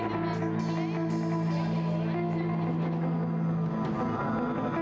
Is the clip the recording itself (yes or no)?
yes